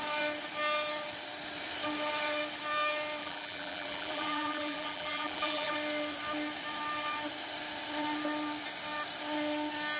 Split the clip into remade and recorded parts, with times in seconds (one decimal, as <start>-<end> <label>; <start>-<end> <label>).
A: 0.0-3.2 recorded; 3.2-5.7 remade; 5.7-10.0 recorded